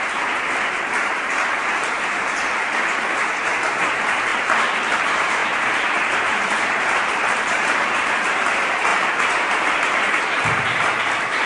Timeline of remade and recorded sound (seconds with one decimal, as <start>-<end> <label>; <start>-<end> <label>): 0.0-4.3 remade; 4.3-5.0 recorded; 5.0-11.5 remade